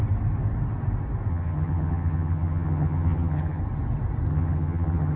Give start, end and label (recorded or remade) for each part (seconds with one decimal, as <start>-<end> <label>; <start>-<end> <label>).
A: 0.0-1.3 recorded; 1.3-3.6 remade; 3.6-4.3 recorded; 4.3-5.2 remade

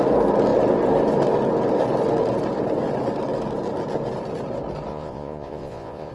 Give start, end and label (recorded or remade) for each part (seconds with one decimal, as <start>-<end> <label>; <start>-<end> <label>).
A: 0.0-4.9 recorded; 4.9-6.1 remade

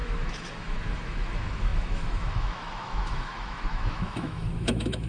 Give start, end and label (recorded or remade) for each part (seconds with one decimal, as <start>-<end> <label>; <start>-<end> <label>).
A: 0.0-5.1 remade

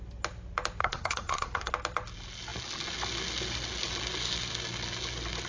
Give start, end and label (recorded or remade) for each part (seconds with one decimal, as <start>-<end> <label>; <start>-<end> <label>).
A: 0.0-0.8 recorded; 0.8-1.7 remade; 1.7-5.5 recorded

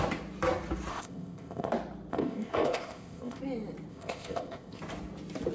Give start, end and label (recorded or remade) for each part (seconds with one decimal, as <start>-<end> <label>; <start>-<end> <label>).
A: 0.0-0.9 recorded; 0.9-1.7 remade; 1.7-2.1 recorded; 2.1-3.4 remade; 3.4-3.9 recorded; 3.9-4.8 remade; 4.8-5.5 recorded